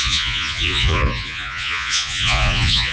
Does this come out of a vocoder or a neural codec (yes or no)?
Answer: yes